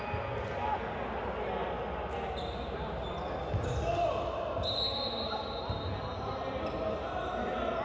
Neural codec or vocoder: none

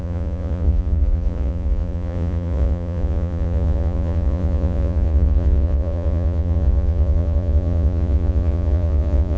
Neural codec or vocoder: vocoder, Vocos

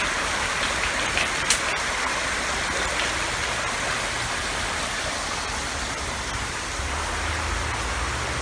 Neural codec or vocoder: none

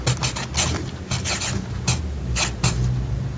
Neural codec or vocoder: none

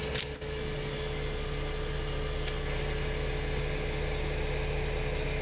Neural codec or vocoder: none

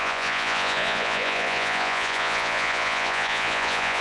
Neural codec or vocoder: vocoder, Vocos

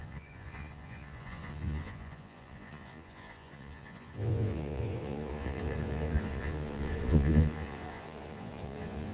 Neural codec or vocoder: vocoder, Vocos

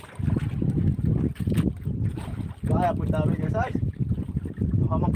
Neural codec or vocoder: none